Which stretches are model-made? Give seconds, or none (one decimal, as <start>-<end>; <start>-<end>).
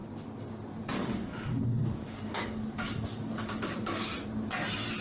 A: 1.0-4.0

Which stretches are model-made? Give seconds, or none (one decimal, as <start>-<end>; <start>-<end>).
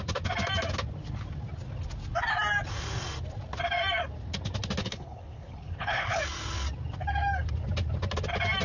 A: 4.8-6.2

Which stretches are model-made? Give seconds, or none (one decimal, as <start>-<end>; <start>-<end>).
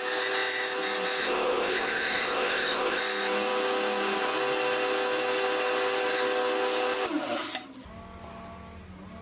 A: 1.2-3.0